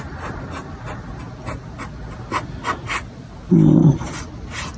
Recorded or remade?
recorded